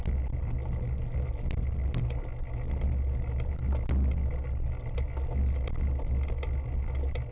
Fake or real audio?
real